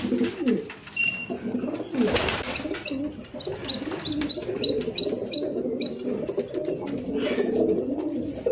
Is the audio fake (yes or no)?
no